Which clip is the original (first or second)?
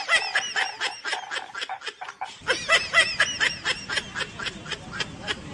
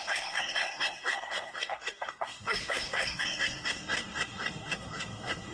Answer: first